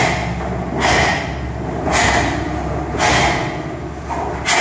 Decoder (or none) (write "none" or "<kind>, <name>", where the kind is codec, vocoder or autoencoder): none